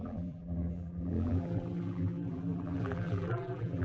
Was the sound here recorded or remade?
remade